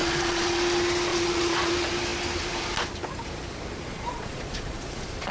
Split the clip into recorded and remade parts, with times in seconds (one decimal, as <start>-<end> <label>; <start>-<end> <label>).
0.0-0.6 remade; 0.6-1.1 recorded; 1.1-1.7 remade; 1.7-3.9 recorded; 3.9-5.3 remade